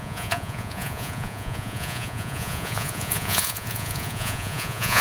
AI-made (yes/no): yes